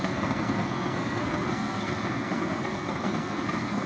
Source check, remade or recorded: remade